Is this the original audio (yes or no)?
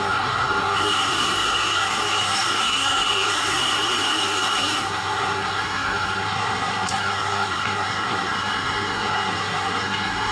no